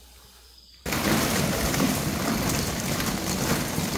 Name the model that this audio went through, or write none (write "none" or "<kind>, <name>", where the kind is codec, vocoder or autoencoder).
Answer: none